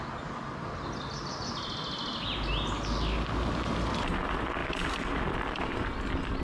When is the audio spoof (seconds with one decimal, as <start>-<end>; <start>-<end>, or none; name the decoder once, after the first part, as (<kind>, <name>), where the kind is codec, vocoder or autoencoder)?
none